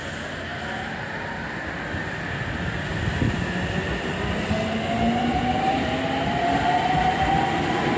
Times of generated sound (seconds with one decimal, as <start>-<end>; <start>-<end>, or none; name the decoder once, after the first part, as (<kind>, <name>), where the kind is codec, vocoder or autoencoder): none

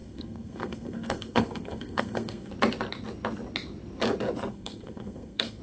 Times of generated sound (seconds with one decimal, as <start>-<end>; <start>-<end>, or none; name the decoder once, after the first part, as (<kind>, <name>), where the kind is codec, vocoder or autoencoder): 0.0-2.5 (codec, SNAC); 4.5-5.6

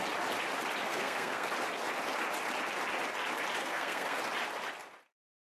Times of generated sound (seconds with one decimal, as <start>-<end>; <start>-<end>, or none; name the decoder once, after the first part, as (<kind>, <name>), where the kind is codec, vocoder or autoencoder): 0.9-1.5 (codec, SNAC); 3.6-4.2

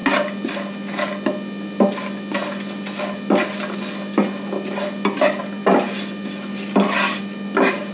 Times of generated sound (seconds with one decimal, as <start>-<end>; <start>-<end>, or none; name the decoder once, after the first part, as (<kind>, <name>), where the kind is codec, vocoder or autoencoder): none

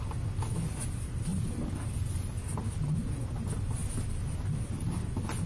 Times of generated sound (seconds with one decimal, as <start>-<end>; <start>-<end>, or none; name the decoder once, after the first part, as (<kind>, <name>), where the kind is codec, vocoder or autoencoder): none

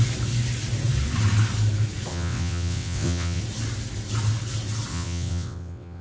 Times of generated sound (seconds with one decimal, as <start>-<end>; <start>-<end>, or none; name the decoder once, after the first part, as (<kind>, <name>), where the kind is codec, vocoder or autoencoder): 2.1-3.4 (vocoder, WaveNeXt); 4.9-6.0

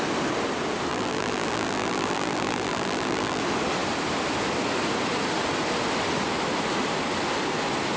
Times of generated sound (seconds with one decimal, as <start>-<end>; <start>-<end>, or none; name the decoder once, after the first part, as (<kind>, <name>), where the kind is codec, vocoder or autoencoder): 0.9-3.4 (vocoder, BigVGAN v2)